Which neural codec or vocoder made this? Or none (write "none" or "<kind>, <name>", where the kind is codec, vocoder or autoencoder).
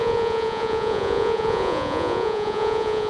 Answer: vocoder, Vocos